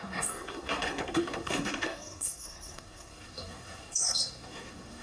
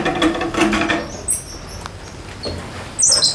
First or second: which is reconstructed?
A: first